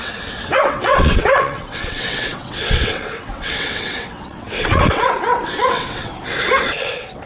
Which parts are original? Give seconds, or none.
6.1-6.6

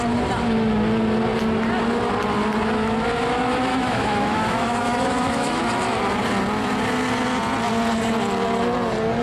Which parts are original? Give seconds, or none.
0.0-3.7; 5.7-9.2

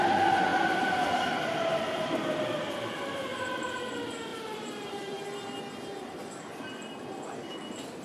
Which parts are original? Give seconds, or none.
0.0-0.5; 1.3-4.3; 7.5-8.0

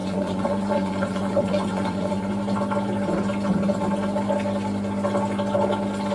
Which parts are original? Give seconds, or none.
2.3-6.1

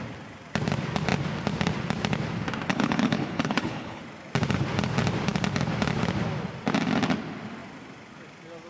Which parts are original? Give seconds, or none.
0.0-2.7; 4.0-8.7

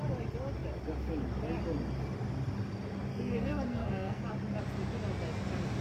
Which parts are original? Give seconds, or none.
0.0-3.1; 4.2-5.8

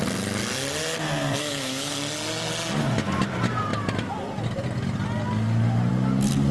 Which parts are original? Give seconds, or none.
0.0-1.4; 1.9-6.5

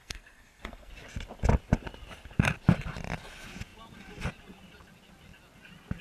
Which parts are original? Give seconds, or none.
0.9-6.0